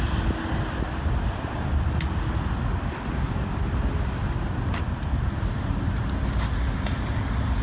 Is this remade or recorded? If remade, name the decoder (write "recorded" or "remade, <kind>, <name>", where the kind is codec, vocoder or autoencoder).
recorded